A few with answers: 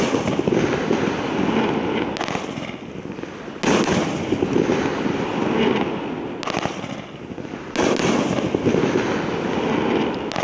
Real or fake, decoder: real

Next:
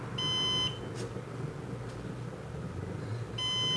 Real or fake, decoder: real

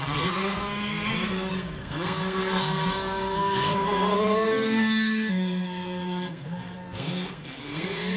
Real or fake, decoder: fake, codec, SNAC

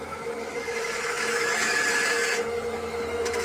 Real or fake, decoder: fake, autoencoder, DAC-VAE